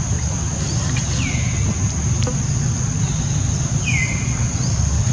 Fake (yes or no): no